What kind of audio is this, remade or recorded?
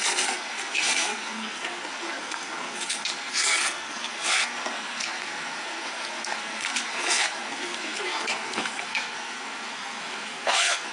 remade